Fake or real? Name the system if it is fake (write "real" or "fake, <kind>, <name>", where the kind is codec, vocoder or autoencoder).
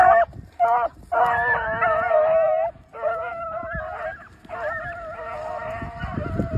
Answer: real